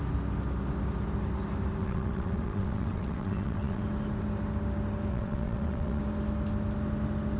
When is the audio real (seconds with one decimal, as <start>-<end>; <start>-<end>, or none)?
0.0-1.8; 3.8-5.1; 6.0-7.4